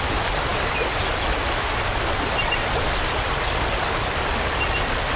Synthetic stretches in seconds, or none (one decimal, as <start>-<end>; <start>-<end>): none